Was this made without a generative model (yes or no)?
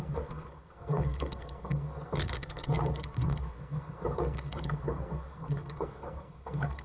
no